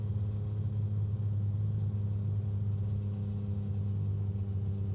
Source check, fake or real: real